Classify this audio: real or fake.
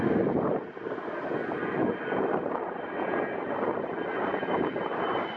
real